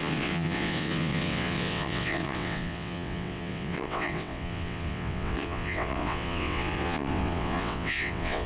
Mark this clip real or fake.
fake